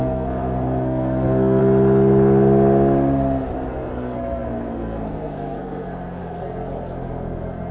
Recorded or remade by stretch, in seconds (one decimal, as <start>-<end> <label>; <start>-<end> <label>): 0.0-1.6 remade; 1.6-3.7 recorded; 3.7-7.7 remade